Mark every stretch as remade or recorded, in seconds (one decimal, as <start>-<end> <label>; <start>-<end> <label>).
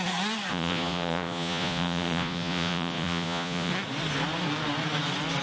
0.0-0.5 recorded; 0.5-3.7 remade; 3.7-5.4 recorded